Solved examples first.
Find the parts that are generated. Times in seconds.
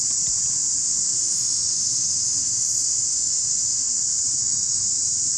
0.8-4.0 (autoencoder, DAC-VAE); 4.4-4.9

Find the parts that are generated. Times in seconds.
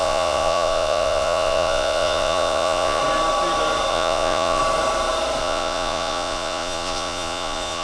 0.0-3.0 (vocoder, Vocos); 3.9-4.6; 5.4-7.8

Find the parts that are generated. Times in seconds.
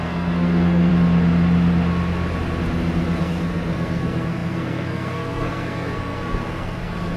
0.0-0.9 (codec, SNAC); 3.2-7.2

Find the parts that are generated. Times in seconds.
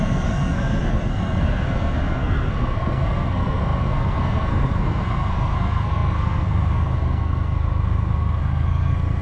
0.0-9.2 (codec, SNAC)